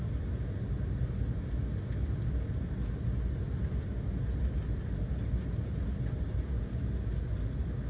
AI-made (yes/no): no